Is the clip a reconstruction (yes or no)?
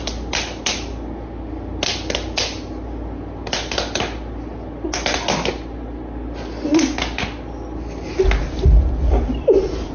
no